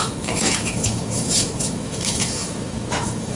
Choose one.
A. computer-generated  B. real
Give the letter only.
A